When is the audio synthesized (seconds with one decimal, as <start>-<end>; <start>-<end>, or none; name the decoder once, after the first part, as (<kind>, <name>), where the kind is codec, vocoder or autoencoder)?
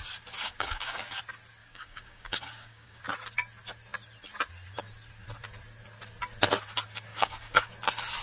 0.4-1.2 (codec, DAC); 1.6-3.0; 7.1-7.7